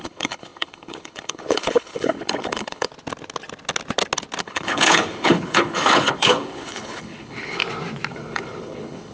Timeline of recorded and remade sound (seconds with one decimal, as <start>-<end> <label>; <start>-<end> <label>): 0.0-2.9 remade; 2.9-4.4 recorded; 4.4-7.6 remade; 7.6-8.1 recorded; 8.1-9.1 remade